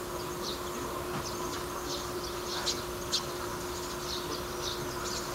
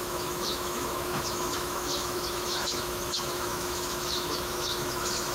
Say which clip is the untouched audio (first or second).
first